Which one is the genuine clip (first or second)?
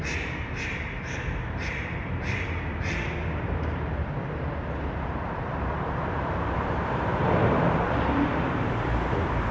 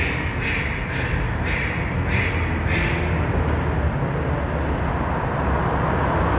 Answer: second